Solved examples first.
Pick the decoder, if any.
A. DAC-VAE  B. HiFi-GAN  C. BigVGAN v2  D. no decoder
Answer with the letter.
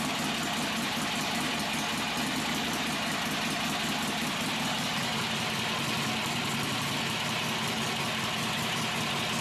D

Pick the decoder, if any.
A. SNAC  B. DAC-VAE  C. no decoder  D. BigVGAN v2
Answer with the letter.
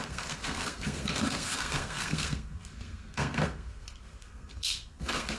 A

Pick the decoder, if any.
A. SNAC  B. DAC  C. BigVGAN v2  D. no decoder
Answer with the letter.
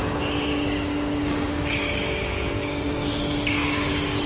B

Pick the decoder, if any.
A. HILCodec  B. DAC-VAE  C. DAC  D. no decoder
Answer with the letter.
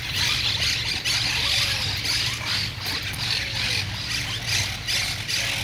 D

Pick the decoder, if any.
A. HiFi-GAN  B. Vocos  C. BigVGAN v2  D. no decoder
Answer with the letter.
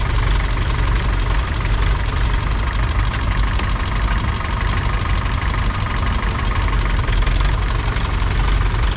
C